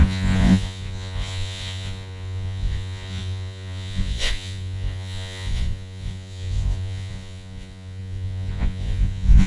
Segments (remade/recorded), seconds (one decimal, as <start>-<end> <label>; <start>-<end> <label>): 0.0-9.5 remade